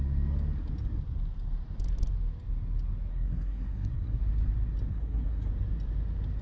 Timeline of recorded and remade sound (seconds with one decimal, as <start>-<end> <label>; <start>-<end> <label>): 0.0-3.1 recorded; 3.1-4.2 remade; 4.2-4.9 recorded; 4.9-5.5 remade; 5.5-6.4 recorded